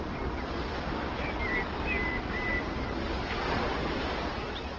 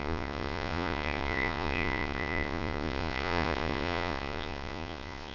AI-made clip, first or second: second